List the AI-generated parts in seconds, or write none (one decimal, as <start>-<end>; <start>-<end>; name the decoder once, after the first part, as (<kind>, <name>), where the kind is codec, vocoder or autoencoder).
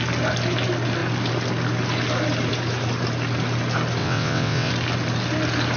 4.0-4.7 (vocoder, WaveNeXt)